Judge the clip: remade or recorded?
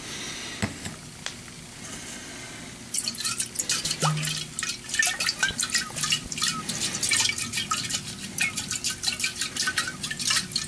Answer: recorded